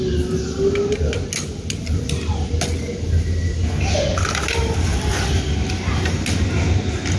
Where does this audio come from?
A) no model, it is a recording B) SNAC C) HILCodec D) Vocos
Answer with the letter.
A